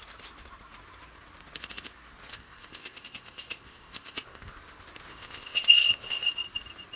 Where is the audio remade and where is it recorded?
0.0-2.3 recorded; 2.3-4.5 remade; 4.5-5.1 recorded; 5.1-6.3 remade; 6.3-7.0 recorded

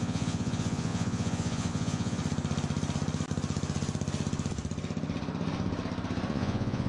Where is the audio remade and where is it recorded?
0.0-2.2 remade; 2.2-6.3 recorded; 6.3-6.9 remade

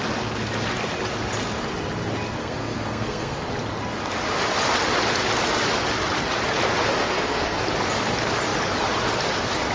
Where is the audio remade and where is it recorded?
0.0-2.4 recorded; 2.4-3.5 remade; 3.5-7.0 recorded; 7.0-7.6 remade; 7.6-9.7 recorded

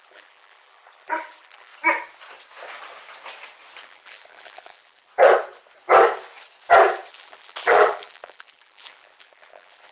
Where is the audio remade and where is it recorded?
0.0-1.7 remade; 1.7-3.8 recorded; 3.8-5.1 remade; 5.1-7.1 recorded; 7.1-9.9 remade

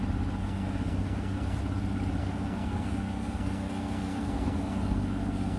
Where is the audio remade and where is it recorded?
0.0-0.4 recorded; 0.4-1.6 remade; 1.6-2.2 recorded; 2.2-5.6 remade

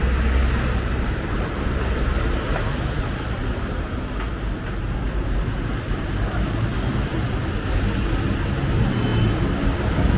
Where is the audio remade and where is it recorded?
0.0-10.2 recorded